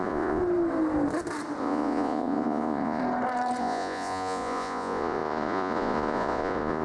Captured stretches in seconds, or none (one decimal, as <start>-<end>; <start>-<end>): 0.4-1.6; 3.0-3.6